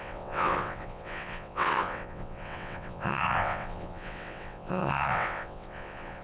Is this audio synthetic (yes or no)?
yes